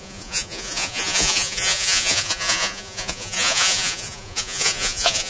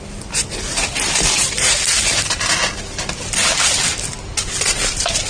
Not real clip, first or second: first